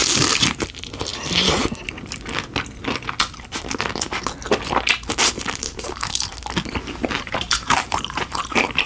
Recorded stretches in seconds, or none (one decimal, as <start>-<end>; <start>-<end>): 1.1-5.6; 6.3-6.9